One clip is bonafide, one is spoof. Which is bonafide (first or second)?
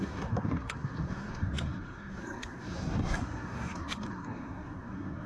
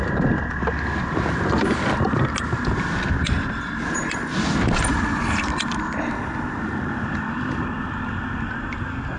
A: second